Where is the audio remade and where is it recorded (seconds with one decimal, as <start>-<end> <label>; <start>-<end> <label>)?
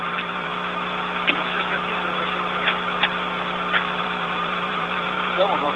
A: 0.0-0.5 remade; 0.5-4.0 recorded; 4.0-5.8 remade